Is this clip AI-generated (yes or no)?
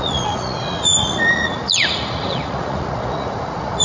yes